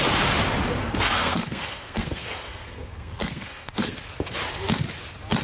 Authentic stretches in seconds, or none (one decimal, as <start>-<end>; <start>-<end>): 0.0-0.8; 4.0-5.4